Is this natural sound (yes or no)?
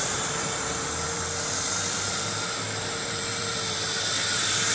no